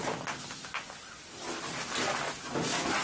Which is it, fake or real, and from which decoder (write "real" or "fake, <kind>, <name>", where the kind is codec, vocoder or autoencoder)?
real